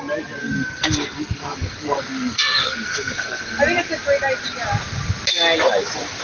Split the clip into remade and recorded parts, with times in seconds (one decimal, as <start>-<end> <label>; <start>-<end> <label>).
0.0-0.4 recorded; 0.4-3.6 remade; 3.6-6.2 recorded

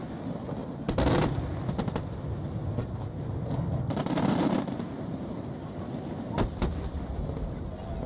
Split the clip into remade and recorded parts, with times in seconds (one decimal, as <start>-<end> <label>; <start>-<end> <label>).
0.0-8.1 recorded

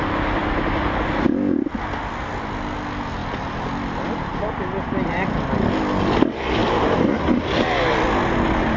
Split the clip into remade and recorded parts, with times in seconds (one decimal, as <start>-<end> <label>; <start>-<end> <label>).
0.0-6.6 recorded; 6.6-7.8 remade; 7.8-8.8 recorded

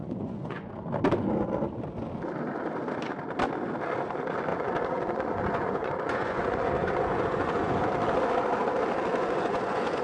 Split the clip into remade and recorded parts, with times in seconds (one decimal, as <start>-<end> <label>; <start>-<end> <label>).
0.0-0.7 remade; 0.7-4.5 recorded; 4.5-7.9 remade; 7.9-9.1 recorded; 9.1-10.0 remade

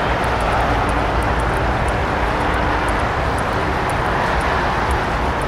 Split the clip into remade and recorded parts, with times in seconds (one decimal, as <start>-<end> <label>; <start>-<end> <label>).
0.0-5.5 recorded

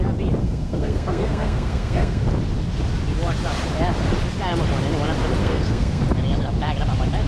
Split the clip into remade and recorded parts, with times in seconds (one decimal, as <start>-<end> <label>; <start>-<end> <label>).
0.0-0.4 recorded; 0.4-2.2 remade; 2.2-5.4 recorded; 5.4-6.0 remade; 6.0-7.3 recorded